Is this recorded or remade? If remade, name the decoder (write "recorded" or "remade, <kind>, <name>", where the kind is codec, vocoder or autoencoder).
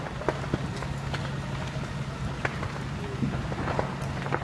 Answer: recorded